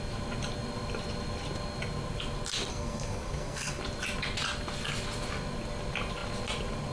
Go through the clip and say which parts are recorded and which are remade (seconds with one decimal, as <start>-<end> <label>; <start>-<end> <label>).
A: 0.0-2.7 recorded; 2.7-3.8 remade; 3.8-6.9 recorded